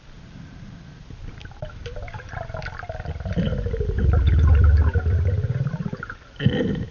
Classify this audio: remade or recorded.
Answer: recorded